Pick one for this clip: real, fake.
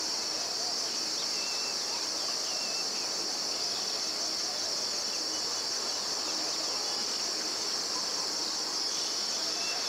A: real